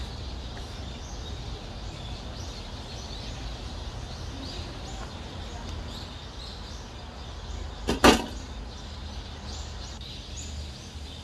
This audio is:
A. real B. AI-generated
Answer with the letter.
A